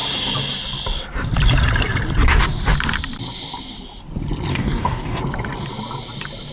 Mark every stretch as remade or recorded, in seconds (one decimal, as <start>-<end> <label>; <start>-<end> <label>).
0.0-4.5 recorded; 4.5-5.2 remade; 5.2-6.5 recorded